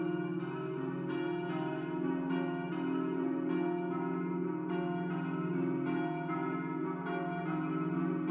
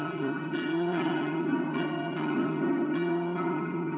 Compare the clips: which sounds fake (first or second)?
second